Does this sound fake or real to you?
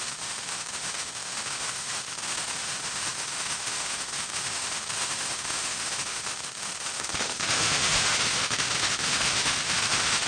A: fake